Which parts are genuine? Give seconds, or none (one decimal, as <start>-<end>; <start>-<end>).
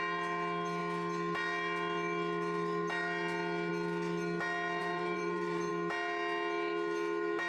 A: 0.0-4.8; 5.7-7.5